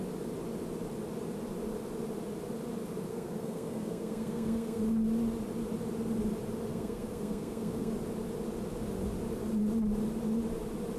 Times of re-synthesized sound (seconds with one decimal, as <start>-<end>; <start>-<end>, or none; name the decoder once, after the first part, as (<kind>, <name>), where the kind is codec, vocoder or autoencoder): 3.1-4.8 (codec, SNAC); 6.7-7.9